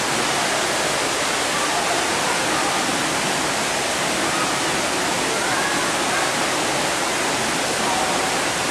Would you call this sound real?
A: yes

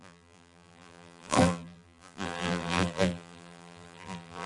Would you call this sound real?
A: no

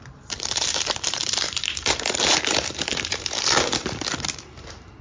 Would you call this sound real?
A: no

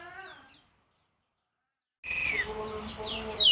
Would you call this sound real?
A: yes